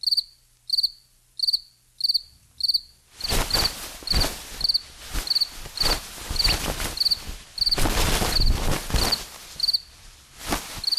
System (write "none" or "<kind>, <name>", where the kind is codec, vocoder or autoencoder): none